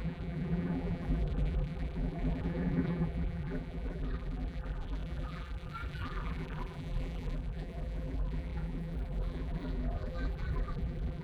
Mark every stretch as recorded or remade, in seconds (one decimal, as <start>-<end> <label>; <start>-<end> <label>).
0.0-11.2 remade